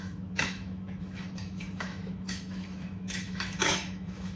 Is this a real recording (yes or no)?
no